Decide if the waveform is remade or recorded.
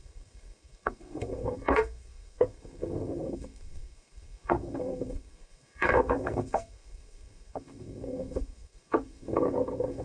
remade